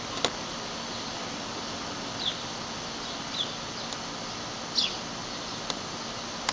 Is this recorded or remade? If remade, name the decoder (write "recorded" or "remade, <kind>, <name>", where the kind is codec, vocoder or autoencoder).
recorded